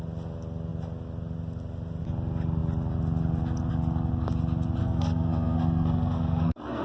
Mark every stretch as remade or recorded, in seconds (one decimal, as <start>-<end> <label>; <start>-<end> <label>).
0.0-4.8 recorded; 4.8-6.8 remade